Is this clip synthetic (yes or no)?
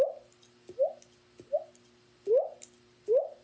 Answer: no